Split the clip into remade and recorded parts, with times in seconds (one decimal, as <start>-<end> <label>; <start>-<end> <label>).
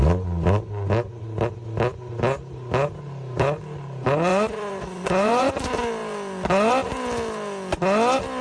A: 0.0-4.3 recorded; 4.3-5.5 remade; 5.5-8.4 recorded